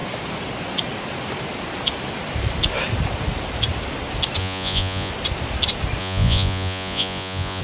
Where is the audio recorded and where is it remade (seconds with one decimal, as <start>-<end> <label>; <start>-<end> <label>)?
0.0-4.4 recorded; 4.4-5.1 remade; 5.1-6.0 recorded; 6.0-7.6 remade